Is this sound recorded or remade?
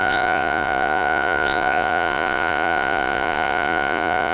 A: remade